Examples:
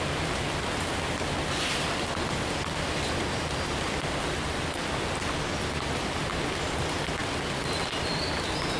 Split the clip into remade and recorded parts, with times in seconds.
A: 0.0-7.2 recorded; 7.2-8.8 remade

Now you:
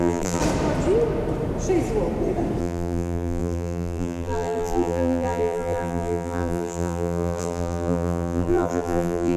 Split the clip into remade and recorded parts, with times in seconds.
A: 0.0-0.4 remade; 0.4-2.6 recorded; 2.6-9.4 remade

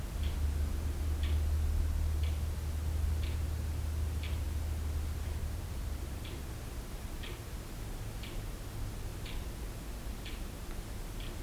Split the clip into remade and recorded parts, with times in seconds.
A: 0.0-5.4 recorded; 5.4-6.5 remade; 6.5-9.1 recorded; 9.1-10.7 remade; 10.7-11.4 recorded

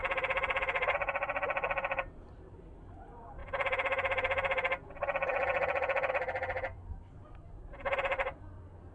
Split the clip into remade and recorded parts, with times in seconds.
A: 0.0-3.4 remade; 3.4-6.1 recorded; 6.1-8.9 remade

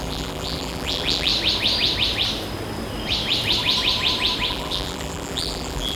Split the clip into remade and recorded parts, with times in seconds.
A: 0.0-1.3 remade; 1.3-4.5 recorded; 4.5-6.0 remade

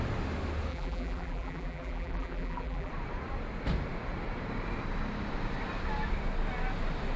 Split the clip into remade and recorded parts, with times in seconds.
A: 0.0-0.7 recorded; 0.7-2.9 remade; 2.9-7.2 recorded

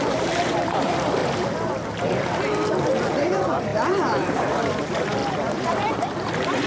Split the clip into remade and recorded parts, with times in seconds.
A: 0.0-1.2 remade; 1.2-2.7 recorded; 2.7-6.7 remade